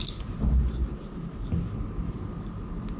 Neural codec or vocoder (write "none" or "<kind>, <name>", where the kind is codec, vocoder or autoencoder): none